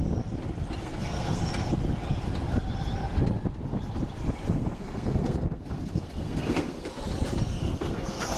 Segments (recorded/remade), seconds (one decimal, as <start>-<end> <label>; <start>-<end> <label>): 0.0-0.8 recorded; 0.8-1.4 remade; 1.4-4.5 recorded; 4.5-6.9 remade; 6.9-7.6 recorded; 7.6-8.4 remade